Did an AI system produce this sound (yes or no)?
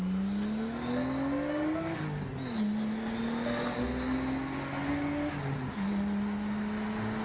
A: no